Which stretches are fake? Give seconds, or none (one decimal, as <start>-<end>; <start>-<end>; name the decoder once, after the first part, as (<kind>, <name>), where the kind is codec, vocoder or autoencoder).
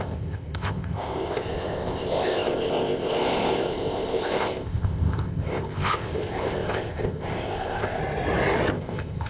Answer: 0.0-8.0 (codec, ZipCodec); 8.7-9.3